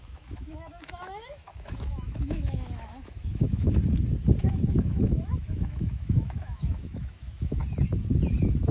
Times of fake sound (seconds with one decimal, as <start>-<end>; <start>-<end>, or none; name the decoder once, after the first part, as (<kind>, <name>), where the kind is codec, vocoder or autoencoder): 0.0-3.8 (autoencoder, DAC-VAE); 4.4-7.6